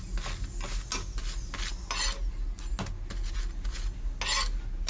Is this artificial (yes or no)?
no